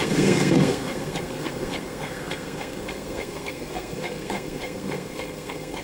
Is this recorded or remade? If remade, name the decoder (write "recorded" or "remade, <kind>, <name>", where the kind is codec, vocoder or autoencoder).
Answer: remade, codec, SNAC